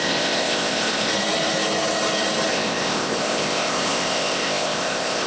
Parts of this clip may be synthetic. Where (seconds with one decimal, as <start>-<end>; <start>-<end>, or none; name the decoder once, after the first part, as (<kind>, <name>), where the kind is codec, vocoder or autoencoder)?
0.0-1.1 (codec, ZipCodec); 2.5-5.3